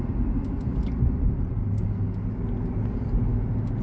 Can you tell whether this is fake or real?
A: real